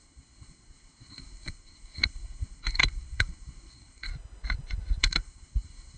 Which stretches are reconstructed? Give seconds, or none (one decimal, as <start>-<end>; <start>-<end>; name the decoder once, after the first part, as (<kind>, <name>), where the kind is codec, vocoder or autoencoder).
0.0-4.1 (codec, SNAC); 5.0-6.0